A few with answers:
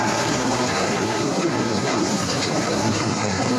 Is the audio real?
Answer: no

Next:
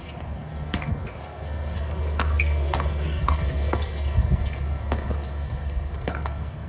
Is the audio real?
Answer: no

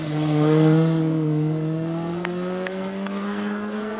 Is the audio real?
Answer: no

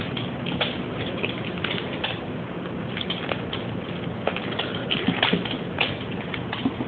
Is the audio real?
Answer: yes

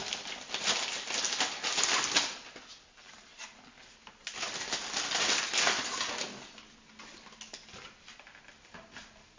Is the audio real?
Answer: yes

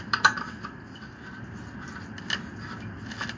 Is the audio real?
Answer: yes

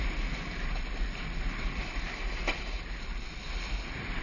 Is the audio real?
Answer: yes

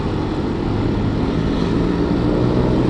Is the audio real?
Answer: yes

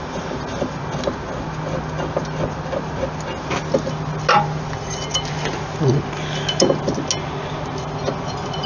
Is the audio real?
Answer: yes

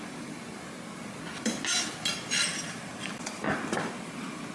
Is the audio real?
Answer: yes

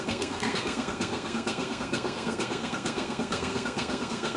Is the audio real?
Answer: no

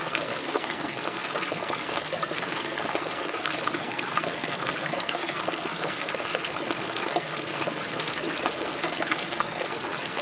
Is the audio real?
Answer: no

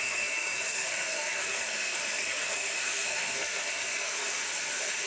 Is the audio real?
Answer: no